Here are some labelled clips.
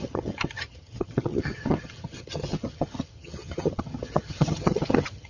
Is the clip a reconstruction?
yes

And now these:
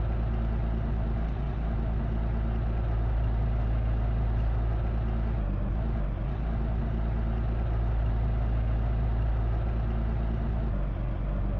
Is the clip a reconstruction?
no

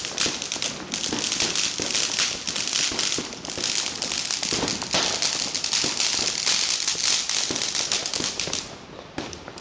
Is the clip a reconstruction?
no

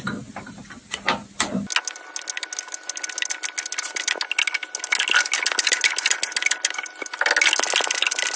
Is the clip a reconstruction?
no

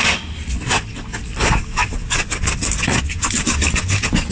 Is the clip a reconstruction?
no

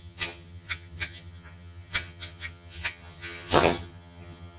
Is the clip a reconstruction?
yes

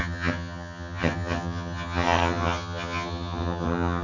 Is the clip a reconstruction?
yes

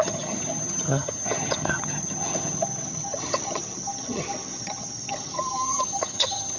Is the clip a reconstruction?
yes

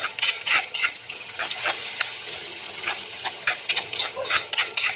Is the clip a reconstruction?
yes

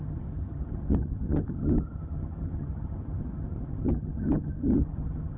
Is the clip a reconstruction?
yes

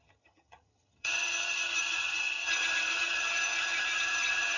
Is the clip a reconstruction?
yes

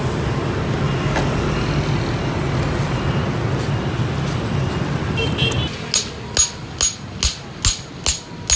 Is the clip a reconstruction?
no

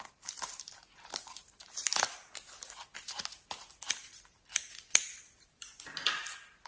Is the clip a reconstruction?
no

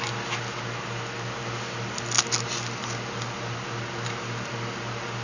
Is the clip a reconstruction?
no